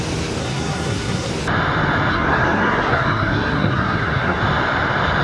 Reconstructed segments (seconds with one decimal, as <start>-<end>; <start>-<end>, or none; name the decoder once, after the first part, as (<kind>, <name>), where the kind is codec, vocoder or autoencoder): 0.4-1.3 (codec, SNAC); 2.1-4.4

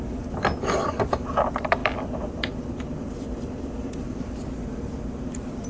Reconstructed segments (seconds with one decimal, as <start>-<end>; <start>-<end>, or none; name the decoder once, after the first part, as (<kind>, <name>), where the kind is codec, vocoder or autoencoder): 1.8-5.2 (vocoder, BigVGAN v2)

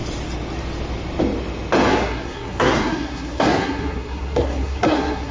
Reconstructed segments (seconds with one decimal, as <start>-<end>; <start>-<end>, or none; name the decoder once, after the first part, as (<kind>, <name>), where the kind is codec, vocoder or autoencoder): 1.9-5.3 (codec, SNAC)

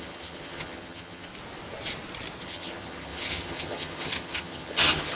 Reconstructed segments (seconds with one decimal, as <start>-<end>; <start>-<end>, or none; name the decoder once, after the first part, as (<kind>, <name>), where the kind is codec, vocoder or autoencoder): 0.0-1.3 (vocoder, HiFi-GAN); 2.4-5.2

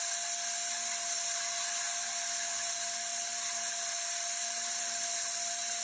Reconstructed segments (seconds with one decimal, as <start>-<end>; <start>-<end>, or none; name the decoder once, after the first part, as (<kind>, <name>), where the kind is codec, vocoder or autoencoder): none

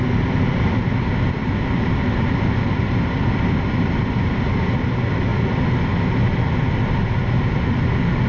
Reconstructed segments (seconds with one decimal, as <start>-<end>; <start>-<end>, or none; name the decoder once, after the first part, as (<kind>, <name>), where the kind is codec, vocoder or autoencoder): none

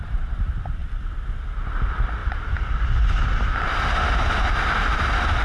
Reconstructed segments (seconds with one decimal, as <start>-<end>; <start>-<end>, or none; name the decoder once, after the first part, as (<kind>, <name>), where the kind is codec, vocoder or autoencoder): 0.0-0.8 (vocoder, BigVGAN v2); 1.7-2.2; 4.8-5.4